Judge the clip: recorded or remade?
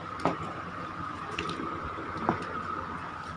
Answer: recorded